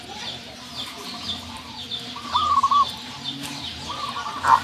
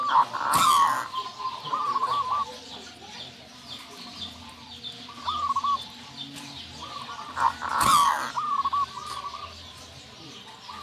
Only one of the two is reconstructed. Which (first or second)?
first